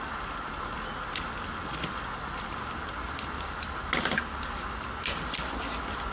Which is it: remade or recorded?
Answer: remade